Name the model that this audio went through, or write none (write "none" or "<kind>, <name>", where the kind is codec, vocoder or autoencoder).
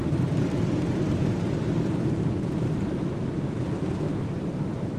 vocoder, BigVGAN v2